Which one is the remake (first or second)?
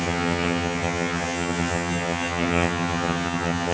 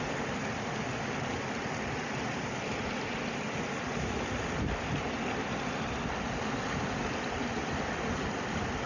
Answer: first